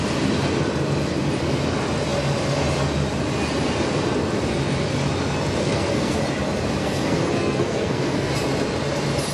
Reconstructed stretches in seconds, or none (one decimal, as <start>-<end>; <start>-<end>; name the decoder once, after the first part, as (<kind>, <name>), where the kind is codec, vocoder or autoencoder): 5.6-6.2 (codec, SNAC); 6.8-8.3